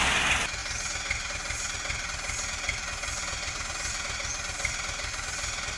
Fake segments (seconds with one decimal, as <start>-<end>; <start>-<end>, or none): none

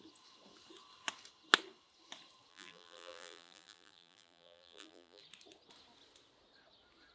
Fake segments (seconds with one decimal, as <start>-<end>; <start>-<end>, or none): 2.5-5.2

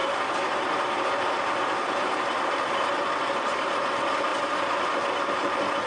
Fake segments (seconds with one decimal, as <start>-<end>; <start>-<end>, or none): 0.0-2.7; 4.3-4.9

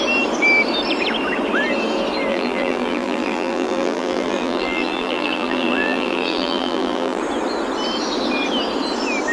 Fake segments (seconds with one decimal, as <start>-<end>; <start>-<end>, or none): 2.3-7.2

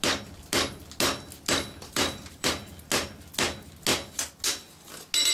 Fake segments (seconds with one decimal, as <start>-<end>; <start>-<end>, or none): 1.9-2.5

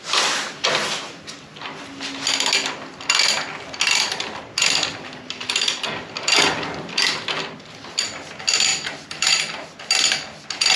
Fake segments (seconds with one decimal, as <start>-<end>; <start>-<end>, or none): 8.7-9.3

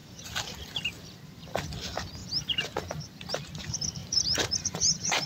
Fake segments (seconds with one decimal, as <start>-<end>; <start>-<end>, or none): 4.0-5.3

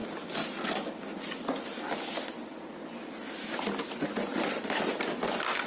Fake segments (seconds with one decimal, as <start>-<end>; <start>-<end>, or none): 4.3-5.0